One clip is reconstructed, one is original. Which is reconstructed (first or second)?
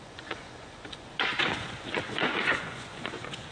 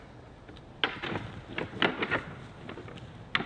first